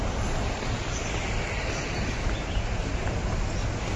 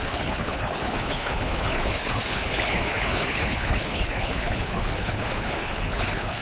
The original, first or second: first